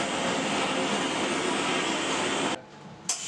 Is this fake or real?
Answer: real